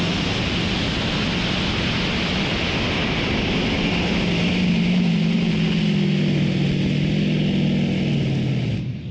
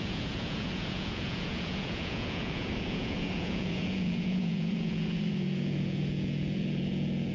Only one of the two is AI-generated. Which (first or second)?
second